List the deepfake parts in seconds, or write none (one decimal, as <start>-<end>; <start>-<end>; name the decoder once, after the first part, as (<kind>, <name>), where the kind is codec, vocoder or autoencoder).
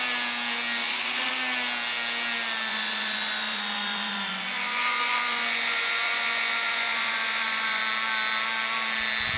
0.8-1.3 (vocoder, Vocos); 2.7-7.8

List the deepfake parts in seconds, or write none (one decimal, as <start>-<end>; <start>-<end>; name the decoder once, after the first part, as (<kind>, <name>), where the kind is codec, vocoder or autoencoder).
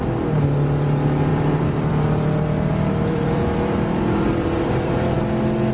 1.3-1.9 (vocoder, BigVGAN v2); 3.1-5.2